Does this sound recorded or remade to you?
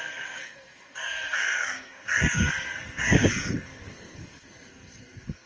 remade